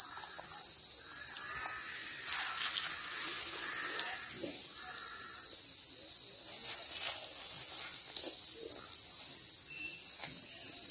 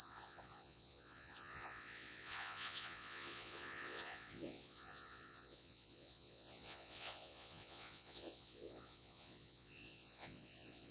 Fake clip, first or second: second